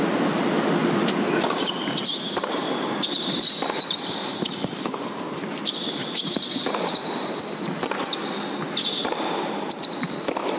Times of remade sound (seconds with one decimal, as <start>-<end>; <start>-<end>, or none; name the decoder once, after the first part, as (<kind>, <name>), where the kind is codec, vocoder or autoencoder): 2.1-3.3 (vocoder, BigVGAN v2); 4.2-7.4; 9.0-10.6